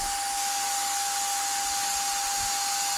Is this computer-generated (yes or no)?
no